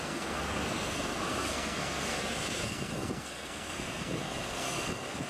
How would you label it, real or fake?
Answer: fake